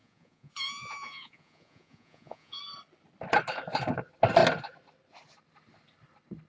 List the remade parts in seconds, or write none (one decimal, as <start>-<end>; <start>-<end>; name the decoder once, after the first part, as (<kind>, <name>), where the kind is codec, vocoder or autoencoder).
0.0-2.6 (vocoder, Vocos)